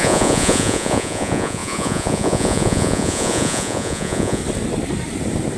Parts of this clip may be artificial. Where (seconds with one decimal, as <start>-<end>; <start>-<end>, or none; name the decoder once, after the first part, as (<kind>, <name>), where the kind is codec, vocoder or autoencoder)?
0.0-4.4 (vocoder, Vocos)